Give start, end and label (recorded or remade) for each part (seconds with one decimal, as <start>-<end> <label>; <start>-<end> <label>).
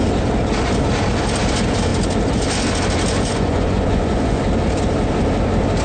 0.0-3.1 recorded; 3.1-4.4 remade; 4.4-5.8 recorded